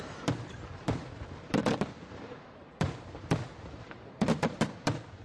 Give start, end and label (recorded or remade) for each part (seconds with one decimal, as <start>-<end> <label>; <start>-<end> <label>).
0.0-5.2 remade